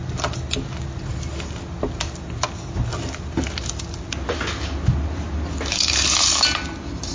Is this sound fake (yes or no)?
no